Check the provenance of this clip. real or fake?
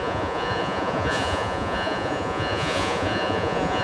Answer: fake